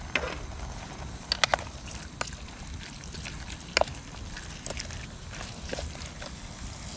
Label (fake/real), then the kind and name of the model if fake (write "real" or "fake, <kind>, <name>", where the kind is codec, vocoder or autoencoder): real